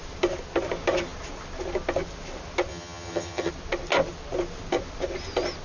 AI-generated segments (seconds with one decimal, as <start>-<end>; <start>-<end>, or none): 2.7-3.5